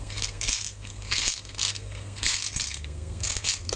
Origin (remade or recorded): remade